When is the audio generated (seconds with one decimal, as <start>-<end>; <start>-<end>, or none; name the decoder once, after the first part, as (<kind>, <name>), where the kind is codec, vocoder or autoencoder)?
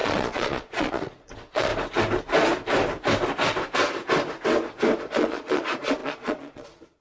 0.0-1.7 (vocoder, Vocos); 5.1-7.0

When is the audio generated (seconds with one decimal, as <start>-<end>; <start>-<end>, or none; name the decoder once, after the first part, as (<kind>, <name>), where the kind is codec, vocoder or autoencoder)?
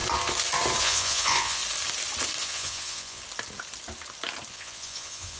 0.8-1.6 (vocoder, Vocos); 2.4-3.2; 4.5-5.4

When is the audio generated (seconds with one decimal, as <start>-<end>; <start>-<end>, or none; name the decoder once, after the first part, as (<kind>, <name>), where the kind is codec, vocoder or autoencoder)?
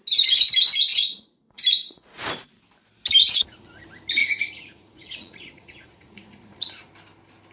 0.9-2.5 (vocoder, Vocos); 3.2-3.8; 4.2-6.8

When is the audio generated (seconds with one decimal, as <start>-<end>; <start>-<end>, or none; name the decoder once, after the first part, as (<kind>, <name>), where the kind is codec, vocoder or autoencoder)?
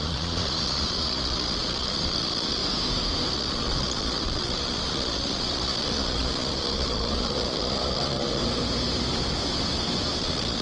0.0-2.6 (vocoder, Vocos); 3.3-8.4; 10.2-10.6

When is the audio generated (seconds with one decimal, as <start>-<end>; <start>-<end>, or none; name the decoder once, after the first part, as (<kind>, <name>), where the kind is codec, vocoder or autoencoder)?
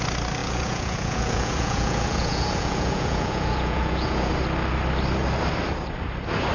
0.4-4.3 (vocoder, Vocos)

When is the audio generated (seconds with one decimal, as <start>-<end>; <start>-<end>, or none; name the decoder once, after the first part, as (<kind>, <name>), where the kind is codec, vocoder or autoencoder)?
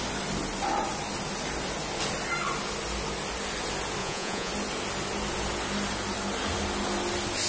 4.0-4.5 (vocoder, Vocos)